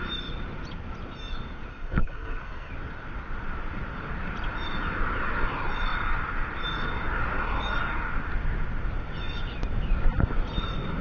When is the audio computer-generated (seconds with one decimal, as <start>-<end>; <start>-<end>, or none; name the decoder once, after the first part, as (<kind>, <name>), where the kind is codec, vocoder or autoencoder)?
1.7-2.7 (codec, SNAC)

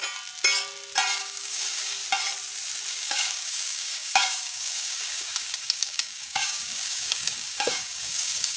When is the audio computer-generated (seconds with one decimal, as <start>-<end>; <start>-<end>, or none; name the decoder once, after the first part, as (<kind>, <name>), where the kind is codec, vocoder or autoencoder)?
1.2-2.0 (codec, DAC); 2.9-8.6

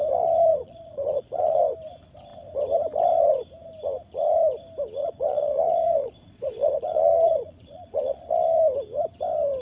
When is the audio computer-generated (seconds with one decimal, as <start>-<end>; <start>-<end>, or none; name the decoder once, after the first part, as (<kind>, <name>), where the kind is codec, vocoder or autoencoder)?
0.5-1.6 (vocoder, Vocos); 5.0-8.3

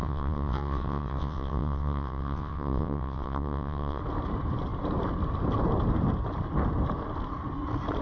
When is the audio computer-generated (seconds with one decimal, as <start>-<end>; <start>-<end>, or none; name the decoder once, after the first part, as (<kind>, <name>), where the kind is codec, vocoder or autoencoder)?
0.0-4.0 (vocoder, WaveNeXt)

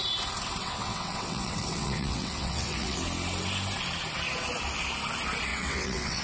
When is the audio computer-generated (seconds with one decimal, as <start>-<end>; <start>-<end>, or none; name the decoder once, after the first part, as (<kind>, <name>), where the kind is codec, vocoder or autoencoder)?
0.6-3.0 (vocoder, WaveNeXt); 5.5-6.2

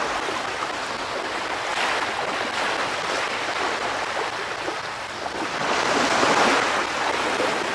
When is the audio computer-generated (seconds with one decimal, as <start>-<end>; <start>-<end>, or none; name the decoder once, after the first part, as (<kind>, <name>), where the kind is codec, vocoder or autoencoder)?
none

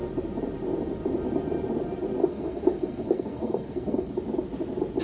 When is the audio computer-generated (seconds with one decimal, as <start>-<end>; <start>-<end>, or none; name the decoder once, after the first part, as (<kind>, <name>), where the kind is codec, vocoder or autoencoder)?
2.2-4.1 (codec, SNAC)

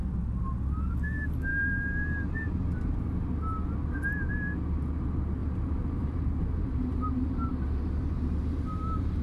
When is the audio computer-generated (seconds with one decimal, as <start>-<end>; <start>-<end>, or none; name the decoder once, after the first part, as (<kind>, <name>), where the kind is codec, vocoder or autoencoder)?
5.4-9.2 (vocoder, BigVGAN v2)